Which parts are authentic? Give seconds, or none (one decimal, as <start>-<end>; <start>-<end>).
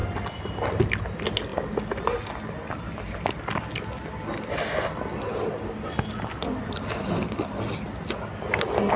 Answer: 0.0-1.5; 2.2-9.0